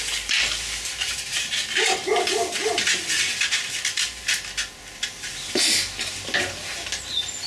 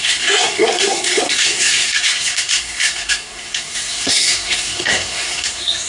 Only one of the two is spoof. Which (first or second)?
second